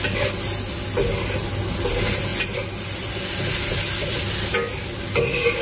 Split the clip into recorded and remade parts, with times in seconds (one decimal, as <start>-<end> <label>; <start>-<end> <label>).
0.0-5.6 recorded